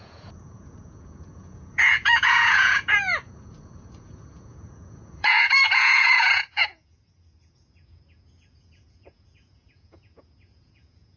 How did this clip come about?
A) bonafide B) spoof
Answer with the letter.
B